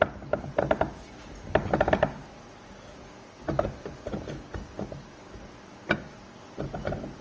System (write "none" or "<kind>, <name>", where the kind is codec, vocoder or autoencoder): none